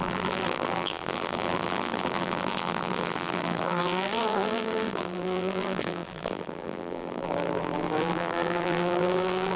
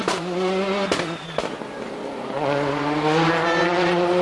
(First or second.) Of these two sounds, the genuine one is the second